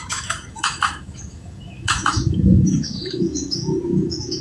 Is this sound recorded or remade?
remade